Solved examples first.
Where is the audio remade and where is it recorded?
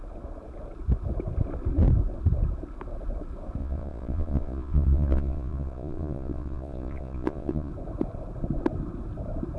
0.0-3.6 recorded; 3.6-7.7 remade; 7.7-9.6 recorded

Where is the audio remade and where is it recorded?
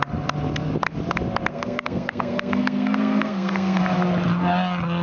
0.0-1.5 recorded; 1.5-3.8 remade; 3.8-5.0 recorded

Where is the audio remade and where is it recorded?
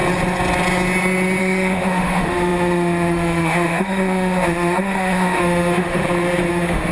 0.0-1.4 recorded; 1.4-6.0 remade; 6.0-6.5 recorded; 6.5-6.9 remade